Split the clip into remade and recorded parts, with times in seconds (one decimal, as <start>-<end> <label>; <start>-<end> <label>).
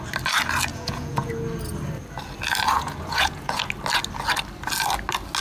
0.0-0.7 recorded; 0.7-1.3 remade; 1.3-2.7 recorded; 2.7-3.6 remade; 3.6-5.4 recorded